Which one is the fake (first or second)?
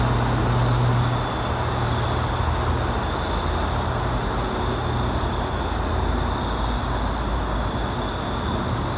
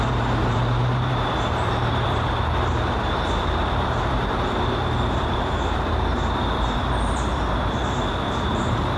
second